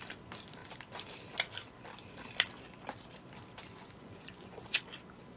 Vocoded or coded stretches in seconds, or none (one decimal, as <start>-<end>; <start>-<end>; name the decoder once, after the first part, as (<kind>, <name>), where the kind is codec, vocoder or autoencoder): 3.7-4.8 (vocoder, Vocos)